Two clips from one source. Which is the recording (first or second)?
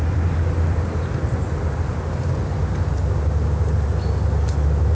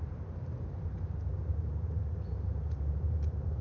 first